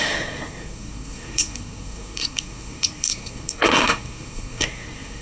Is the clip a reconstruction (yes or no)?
yes